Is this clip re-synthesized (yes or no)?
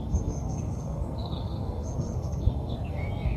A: yes